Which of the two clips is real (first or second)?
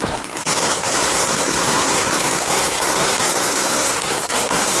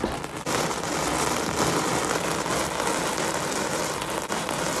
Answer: second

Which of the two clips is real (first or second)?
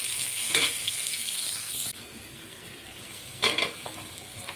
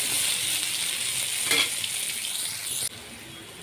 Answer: second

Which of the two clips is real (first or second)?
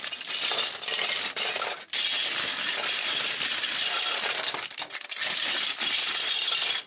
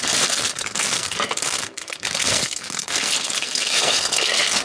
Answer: first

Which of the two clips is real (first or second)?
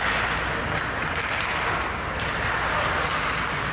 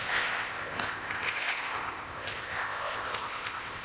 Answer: first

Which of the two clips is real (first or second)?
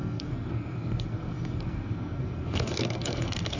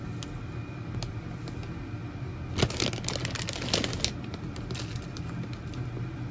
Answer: second